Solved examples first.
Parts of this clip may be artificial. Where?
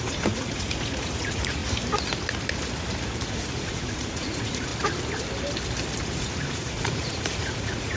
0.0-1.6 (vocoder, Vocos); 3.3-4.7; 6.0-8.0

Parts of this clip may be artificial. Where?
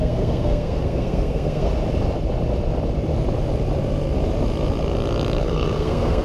0.0-1.7 (codec, SNAC); 5.4-6.2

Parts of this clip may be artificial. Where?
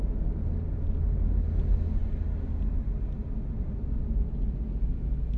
none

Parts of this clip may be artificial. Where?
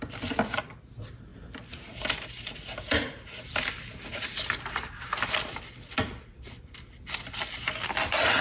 none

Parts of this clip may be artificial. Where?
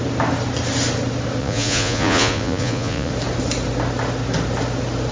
1.4-3.1 (vocoder, Vocos)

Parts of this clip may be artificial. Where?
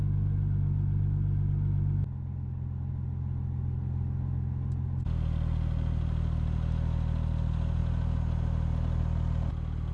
none